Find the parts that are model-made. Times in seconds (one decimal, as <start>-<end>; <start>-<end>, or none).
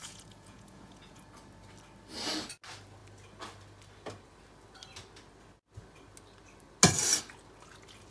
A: 0.0-1.2